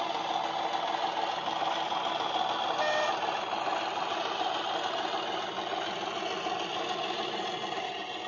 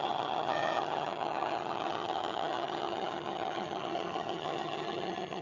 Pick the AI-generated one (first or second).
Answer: second